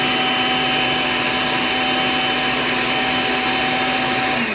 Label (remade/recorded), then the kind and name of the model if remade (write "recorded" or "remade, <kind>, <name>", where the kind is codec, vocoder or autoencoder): recorded